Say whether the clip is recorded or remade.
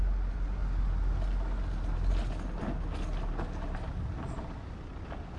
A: recorded